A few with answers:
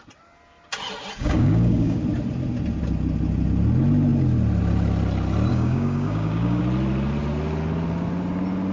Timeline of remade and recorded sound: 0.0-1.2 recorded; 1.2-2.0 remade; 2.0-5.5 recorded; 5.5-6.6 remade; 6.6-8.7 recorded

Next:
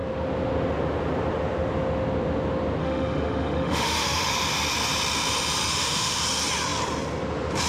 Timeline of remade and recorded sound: 0.0-2.8 recorded; 2.8-4.3 remade; 4.3-5.7 recorded; 5.7-6.2 remade; 6.2-7.7 recorded

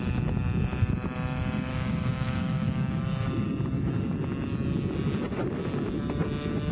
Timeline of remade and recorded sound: 0.0-1.7 recorded; 1.7-3.0 remade; 3.0-6.7 recorded